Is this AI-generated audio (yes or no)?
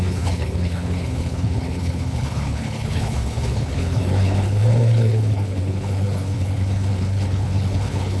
yes